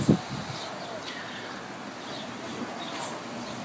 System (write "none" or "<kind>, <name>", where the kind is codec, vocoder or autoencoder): none